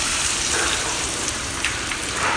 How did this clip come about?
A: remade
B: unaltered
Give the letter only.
A